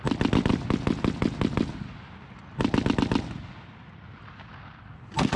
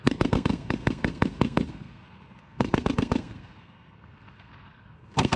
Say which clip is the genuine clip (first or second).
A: first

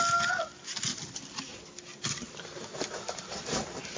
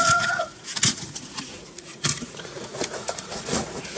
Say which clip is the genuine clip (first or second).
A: first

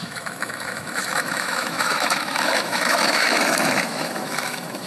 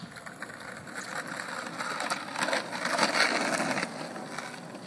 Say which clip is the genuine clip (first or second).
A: second